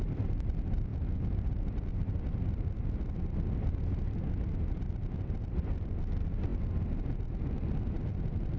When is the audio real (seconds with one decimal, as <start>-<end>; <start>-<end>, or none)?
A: 0.0-8.6